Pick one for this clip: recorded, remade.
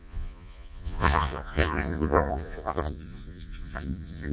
remade